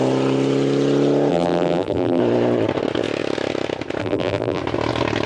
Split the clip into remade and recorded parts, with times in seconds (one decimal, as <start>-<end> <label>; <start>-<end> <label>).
0.0-1.3 recorded; 1.3-2.2 remade; 2.2-4.0 recorded; 4.0-4.6 remade; 4.6-5.3 recorded